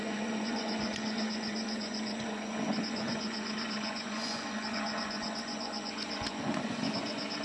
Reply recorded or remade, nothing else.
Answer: remade